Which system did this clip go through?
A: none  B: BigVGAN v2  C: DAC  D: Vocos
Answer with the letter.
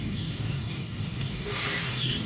C